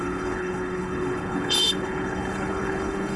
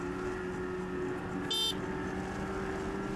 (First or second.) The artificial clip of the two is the first